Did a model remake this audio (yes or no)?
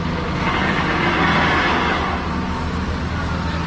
no